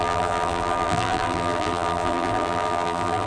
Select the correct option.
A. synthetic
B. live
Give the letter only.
A